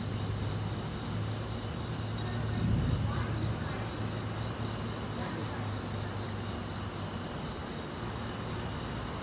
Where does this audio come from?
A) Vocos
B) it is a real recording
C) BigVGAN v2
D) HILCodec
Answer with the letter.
B